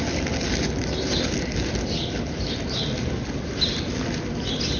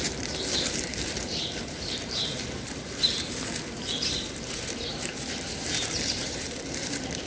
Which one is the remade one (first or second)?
second